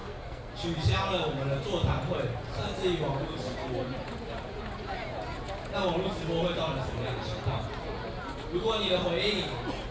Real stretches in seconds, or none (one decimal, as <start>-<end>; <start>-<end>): 0.5-9.9

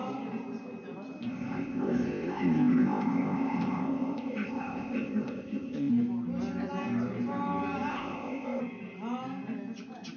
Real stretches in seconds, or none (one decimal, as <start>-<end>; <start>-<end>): 0.0-1.3; 5.9-7.9; 8.6-10.2

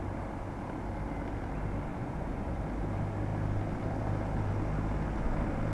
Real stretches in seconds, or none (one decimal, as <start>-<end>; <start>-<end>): 0.0-1.9; 2.6-5.7

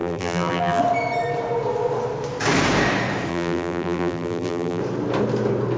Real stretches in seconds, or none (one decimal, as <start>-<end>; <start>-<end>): 0.8-3.3; 4.8-5.8

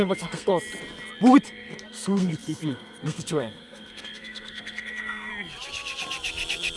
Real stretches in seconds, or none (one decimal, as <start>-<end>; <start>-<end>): 0.5-1.4; 5.3-6.8

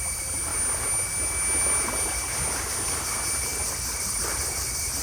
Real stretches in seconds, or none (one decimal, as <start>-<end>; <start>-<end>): 0.0-5.0